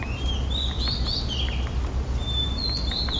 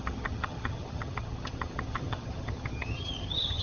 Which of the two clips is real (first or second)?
first